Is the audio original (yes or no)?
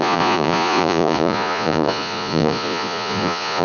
no